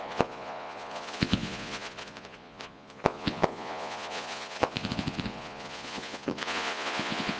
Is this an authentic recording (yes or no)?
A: no